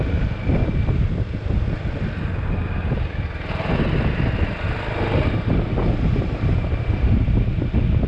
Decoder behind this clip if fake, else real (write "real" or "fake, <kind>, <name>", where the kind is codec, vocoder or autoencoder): real